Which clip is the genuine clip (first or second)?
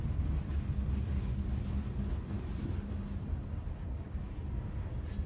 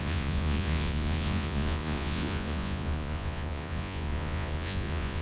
first